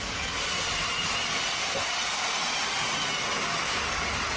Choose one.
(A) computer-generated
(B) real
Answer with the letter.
B